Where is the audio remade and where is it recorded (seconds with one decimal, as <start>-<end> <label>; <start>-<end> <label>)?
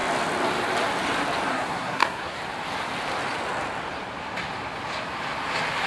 0.0-1.5 recorded; 1.5-2.4 remade; 2.4-5.9 recorded